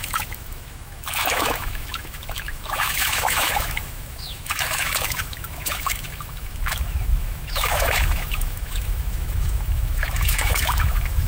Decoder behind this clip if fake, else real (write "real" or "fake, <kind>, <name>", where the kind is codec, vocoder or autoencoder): fake, autoencoder, DAC-VAE